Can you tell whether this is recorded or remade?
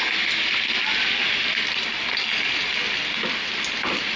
recorded